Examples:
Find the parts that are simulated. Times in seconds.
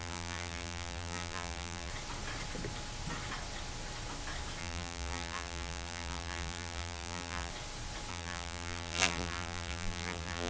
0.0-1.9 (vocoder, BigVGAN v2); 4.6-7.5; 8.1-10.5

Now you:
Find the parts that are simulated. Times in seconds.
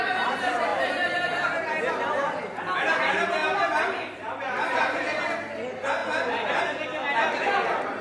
3.4-5.2 (vocoder, BigVGAN v2); 6.0-6.6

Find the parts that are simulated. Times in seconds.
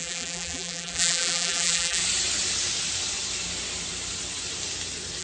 0.0-2.0 (vocoder, BigVGAN v2)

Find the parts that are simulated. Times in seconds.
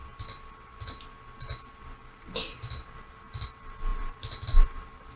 3.9-5.2 (vocoder, BigVGAN v2)